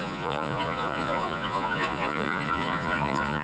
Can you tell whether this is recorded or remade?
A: remade